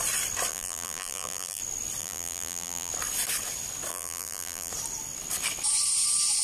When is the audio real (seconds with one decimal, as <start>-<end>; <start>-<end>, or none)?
0.0-0.5; 1.6-2.0; 2.9-3.9; 4.7-6.4